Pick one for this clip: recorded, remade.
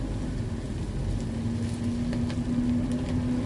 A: recorded